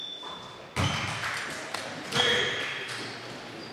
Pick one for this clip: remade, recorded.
recorded